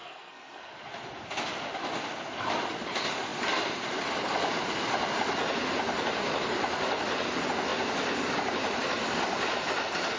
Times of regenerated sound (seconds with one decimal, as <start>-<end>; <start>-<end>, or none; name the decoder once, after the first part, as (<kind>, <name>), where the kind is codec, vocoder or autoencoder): 0.0-0.7 (codec, SNAC)